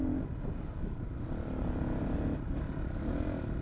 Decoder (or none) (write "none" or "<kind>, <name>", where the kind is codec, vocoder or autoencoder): none